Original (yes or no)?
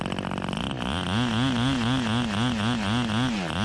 yes